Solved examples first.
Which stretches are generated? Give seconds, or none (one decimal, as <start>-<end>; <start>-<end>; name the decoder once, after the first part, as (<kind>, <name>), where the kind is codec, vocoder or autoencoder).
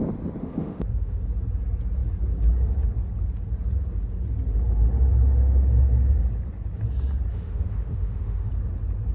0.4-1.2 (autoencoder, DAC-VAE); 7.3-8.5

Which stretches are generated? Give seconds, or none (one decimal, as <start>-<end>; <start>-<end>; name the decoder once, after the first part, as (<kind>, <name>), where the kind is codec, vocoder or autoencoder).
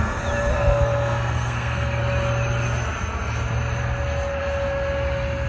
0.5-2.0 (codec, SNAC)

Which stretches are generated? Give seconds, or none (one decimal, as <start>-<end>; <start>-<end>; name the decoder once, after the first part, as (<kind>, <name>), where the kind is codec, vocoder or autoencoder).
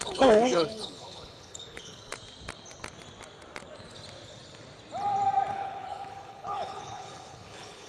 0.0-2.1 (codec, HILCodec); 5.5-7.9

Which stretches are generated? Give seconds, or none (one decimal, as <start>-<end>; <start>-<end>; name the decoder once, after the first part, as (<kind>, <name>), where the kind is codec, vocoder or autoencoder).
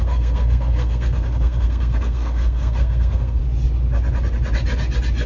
0.0-3.4 (codec, SNAC)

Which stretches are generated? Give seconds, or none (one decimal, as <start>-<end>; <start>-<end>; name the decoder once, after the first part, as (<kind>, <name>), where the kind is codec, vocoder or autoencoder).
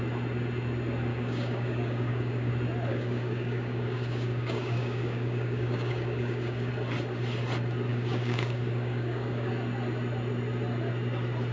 1.1-2.5 (codec, DAC); 2.9-6.7; 7.9-9.5